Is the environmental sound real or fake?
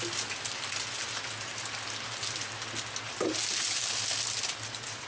real